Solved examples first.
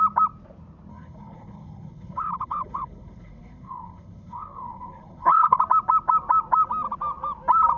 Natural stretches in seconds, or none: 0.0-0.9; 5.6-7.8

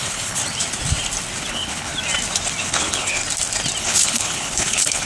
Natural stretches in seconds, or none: 0.4-1.5; 1.9-2.6; 3.2-3.8

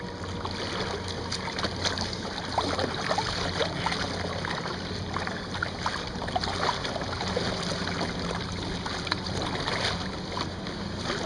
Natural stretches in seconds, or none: 0.0-11.3

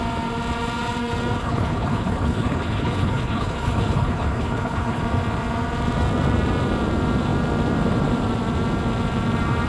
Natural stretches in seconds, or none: 0.0-1.4; 5.0-9.7

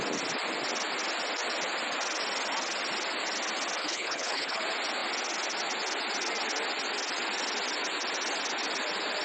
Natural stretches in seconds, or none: 0.0-3.8; 4.6-9.2